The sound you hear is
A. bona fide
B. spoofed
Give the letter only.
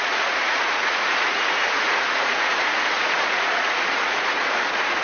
B